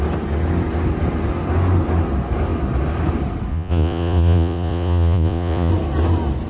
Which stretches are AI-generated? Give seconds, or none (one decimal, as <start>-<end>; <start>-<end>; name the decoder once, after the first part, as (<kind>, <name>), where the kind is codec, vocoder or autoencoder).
3.5-5.7 (vocoder, Vocos)